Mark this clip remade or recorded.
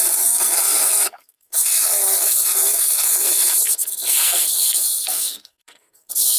remade